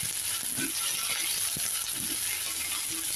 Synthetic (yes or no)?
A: no